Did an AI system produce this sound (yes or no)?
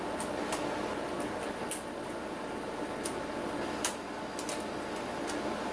no